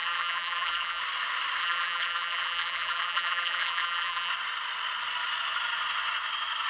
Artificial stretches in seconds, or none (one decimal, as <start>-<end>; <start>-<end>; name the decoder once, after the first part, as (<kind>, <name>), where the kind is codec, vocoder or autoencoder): 0.0-1.0 (vocoder, BigVGAN v2); 1.6-4.3

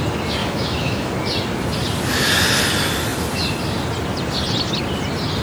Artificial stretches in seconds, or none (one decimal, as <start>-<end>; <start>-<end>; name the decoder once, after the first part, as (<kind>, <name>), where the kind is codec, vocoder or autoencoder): 0.4-1.1 (autoencoder, DAC-VAE)

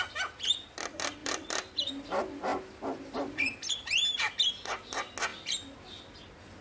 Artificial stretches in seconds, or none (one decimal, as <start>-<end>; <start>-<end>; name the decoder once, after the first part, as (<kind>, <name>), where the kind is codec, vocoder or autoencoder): 1.2-1.9 (vocoder, BigVGAN v2)

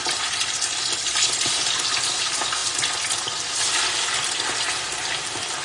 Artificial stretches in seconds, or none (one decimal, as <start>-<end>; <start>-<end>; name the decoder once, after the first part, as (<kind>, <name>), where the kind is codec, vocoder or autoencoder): none

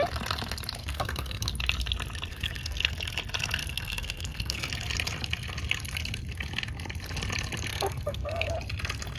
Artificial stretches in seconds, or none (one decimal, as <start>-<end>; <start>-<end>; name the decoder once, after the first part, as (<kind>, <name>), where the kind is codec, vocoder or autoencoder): 0.8-1.5 (codec, SNAC); 2.3-2.9; 3.6-4.7; 7.7-8.5

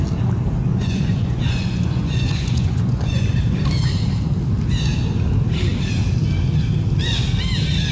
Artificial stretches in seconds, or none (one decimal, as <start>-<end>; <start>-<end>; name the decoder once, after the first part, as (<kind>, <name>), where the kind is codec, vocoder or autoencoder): 0.7-3.2 (vocoder, Vocos)

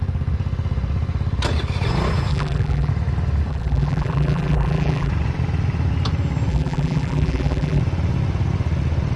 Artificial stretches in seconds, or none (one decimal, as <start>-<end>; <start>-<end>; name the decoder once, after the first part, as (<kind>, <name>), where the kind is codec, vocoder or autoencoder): 2.3-2.9 (vocoder, BigVGAN v2); 3.5-5.1; 6.5-7.8